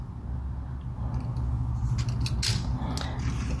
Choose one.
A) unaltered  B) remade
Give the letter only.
A